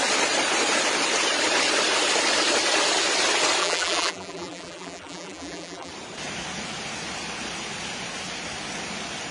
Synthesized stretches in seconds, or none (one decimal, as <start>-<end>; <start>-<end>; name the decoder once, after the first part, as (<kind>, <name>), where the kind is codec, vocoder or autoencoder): 3.6-5.9 (vocoder, BigVGAN v2)